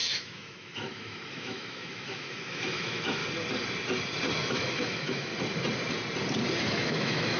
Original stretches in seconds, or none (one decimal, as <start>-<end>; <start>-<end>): 3.2-4.5; 5.3-6.6